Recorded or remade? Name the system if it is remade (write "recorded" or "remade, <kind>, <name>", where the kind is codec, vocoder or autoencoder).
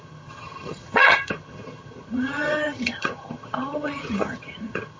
remade, vocoder, HiFi-GAN